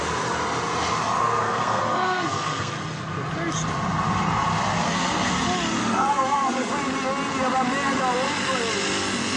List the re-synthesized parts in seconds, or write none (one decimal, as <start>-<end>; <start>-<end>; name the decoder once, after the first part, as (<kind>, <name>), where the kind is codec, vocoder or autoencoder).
1.2-2.7 (codec, SNAC); 4.8-5.3; 5.8-6.7